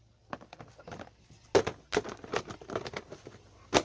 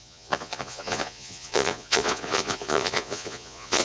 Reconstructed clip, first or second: second